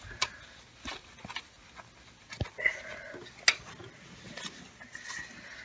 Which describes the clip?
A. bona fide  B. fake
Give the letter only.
A